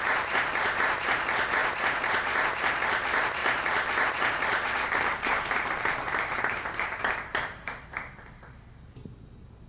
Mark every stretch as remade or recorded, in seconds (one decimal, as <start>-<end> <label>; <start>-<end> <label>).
0.0-3.4 remade; 3.4-4.1 recorded; 4.1-9.7 remade